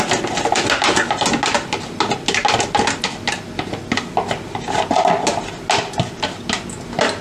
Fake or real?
real